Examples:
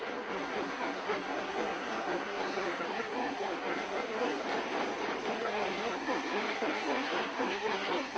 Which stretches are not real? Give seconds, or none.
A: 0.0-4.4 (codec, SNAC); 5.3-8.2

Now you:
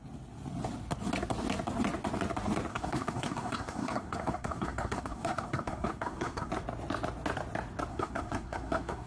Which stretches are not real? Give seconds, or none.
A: 2.7-6.5 (codec, SNAC); 7.9-9.1

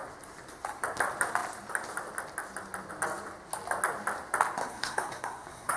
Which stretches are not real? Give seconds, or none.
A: 4.6-5.8 (codec, SNAC)

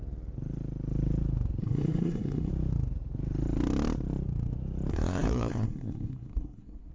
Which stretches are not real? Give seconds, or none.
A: 1.6-2.5 (codec, SNAC); 4.9-6.9